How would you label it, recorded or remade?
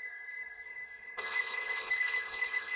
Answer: remade